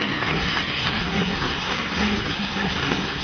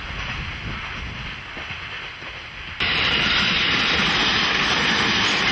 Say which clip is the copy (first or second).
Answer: first